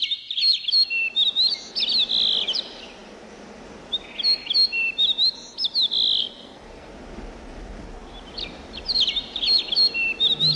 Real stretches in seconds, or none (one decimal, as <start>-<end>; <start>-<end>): 0.0-6.2; 6.9-10.6